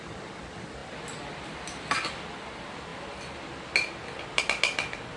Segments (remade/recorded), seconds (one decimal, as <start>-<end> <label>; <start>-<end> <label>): 0.0-5.2 recorded